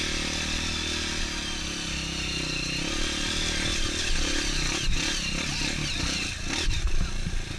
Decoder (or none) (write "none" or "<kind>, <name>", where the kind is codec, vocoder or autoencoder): none